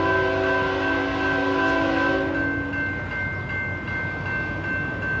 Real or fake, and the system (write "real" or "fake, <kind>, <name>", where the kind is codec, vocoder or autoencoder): real